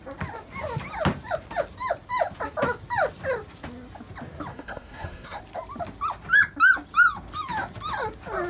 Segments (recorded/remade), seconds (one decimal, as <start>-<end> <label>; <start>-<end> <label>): 0.0-4.5 recorded; 4.5-5.4 remade; 5.4-8.5 recorded